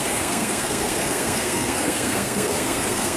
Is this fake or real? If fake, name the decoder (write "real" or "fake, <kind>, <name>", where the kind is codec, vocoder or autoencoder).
fake, codec, SNAC